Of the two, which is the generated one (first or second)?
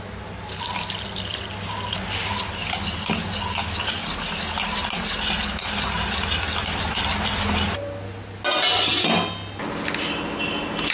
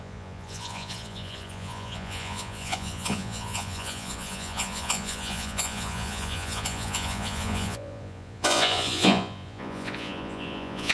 second